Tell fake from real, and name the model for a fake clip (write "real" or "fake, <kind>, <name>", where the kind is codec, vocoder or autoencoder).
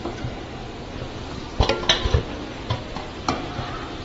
real